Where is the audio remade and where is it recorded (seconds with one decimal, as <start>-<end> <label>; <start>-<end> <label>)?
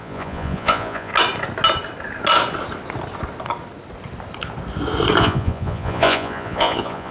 0.0-1.1 remade; 1.1-5.2 recorded; 5.2-7.1 remade